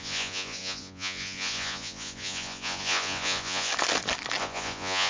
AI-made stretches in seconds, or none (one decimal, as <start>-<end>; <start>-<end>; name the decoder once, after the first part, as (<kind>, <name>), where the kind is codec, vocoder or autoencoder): 0.0-3.7 (vocoder, Vocos); 4.4-5.1